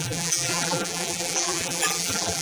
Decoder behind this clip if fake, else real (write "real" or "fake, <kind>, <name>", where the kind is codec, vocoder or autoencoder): fake, vocoder, BigVGAN v2